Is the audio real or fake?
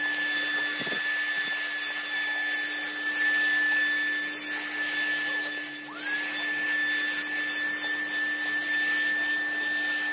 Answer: real